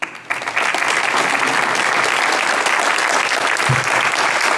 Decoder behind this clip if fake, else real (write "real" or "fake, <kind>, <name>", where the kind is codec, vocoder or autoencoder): real